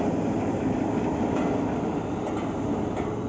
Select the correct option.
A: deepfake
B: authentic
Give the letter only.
B